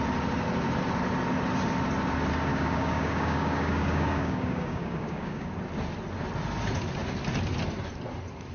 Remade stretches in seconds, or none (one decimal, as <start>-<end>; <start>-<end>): 2.5-5.5